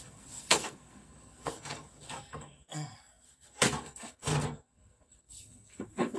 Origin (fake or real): fake